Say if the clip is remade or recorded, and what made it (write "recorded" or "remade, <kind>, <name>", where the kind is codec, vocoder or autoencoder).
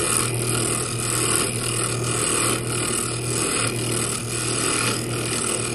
recorded